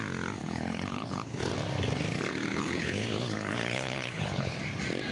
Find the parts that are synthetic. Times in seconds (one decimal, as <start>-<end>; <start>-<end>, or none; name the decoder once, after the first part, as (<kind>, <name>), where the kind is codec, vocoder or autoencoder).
0.4-1.5 (codec, HILCodec); 2.5-4.6